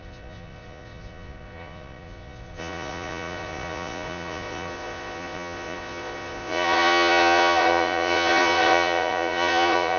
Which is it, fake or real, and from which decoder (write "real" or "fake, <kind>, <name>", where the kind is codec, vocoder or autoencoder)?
fake, vocoder, Vocos